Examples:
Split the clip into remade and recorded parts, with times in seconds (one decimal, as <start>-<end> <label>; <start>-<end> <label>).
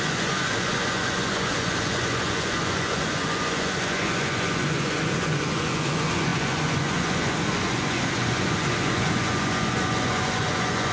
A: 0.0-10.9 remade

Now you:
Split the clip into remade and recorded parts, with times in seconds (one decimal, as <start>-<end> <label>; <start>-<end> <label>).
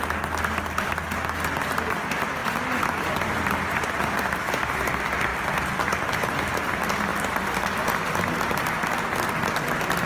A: 0.0-10.1 recorded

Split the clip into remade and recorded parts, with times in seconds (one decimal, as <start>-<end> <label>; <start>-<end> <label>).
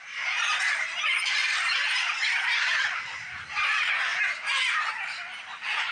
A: 0.0-5.9 recorded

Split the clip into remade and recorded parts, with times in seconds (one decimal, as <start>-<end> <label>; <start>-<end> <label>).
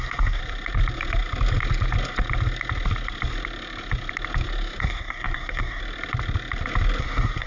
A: 0.0-0.4 remade; 0.4-4.8 recorded; 4.8-5.8 remade; 5.8-7.0 recorded; 7.0-7.5 remade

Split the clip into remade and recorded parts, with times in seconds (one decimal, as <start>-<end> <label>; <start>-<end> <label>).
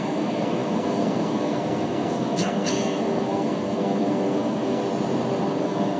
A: 0.0-4.8 remade; 4.8-5.6 recorded; 5.6-6.0 remade